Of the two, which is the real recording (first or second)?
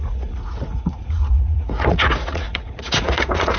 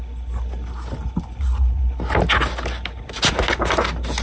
second